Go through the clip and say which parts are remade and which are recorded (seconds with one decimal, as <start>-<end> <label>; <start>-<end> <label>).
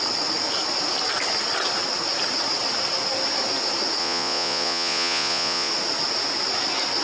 0.0-4.0 recorded; 4.0-5.7 remade; 5.7-7.0 recorded